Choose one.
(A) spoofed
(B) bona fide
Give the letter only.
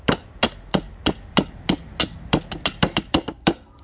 B